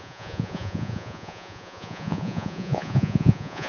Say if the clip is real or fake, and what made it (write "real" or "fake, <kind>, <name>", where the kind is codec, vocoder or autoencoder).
fake, vocoder, Vocos